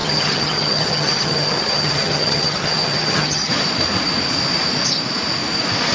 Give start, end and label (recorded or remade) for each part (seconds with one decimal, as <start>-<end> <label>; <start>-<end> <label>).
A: 0.0-3.5 remade; 3.5-5.9 recorded